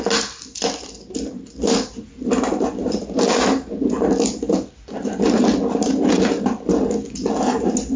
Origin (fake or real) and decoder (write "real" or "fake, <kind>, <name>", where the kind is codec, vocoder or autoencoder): real